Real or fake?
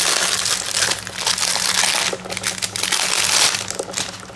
real